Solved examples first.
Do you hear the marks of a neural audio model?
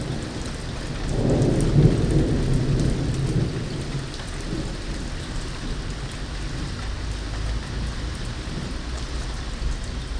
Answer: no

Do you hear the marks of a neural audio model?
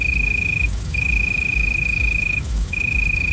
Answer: yes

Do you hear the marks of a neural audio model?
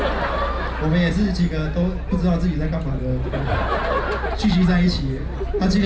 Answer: no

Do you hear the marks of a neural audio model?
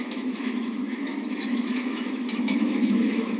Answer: yes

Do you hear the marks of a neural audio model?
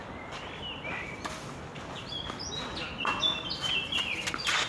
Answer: no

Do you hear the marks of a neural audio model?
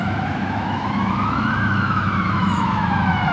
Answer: yes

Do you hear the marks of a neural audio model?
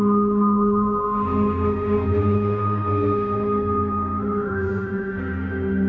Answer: yes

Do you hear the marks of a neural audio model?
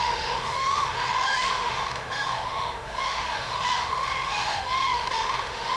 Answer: yes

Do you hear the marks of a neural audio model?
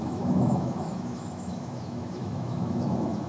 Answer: yes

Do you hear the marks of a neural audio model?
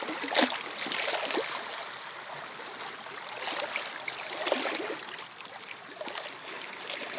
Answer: no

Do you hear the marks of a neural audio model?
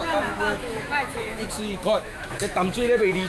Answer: yes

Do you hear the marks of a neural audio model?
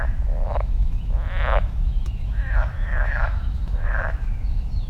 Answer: yes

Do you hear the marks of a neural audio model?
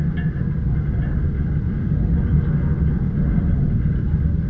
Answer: no